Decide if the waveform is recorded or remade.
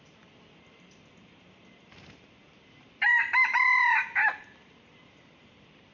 remade